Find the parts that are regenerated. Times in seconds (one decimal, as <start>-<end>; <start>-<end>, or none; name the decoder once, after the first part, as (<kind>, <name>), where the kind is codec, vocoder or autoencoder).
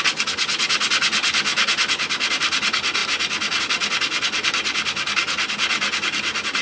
none